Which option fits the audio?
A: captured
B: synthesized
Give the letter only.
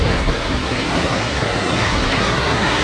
B